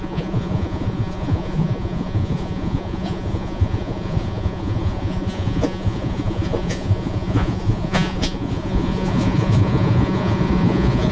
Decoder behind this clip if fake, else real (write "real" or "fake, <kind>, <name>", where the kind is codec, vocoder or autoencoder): fake, vocoder, Vocos